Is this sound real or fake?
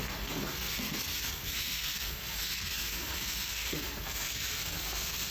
fake